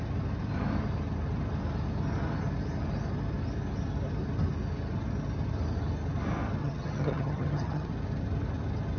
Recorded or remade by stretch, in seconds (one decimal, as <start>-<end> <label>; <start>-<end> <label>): 0.0-6.6 recorded; 6.6-7.9 remade; 7.9-9.0 recorded